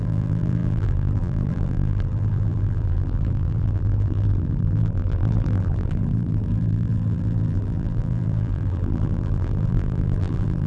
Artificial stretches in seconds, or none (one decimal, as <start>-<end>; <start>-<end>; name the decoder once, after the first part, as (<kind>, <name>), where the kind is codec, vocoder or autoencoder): 0.0-10.7 (vocoder, BigVGAN v2)